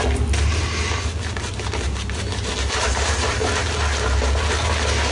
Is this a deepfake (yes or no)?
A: no